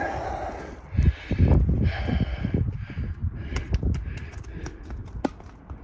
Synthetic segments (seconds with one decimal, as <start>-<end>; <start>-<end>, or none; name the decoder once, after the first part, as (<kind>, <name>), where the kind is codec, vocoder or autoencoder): none